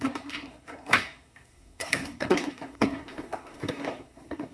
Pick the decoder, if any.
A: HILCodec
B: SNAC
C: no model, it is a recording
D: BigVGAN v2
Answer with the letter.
B